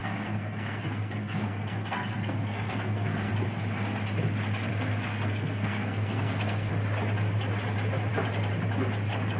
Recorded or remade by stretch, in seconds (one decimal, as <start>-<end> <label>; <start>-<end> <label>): 0.0-3.3 remade; 3.3-4.7 recorded; 4.7-6.7 remade; 6.7-9.4 recorded